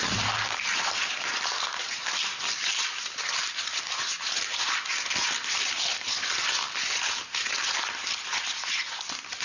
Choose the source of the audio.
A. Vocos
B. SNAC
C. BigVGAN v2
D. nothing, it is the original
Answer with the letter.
D